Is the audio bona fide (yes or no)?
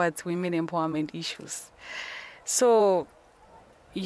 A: no